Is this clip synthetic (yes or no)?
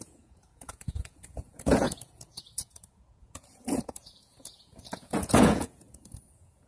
yes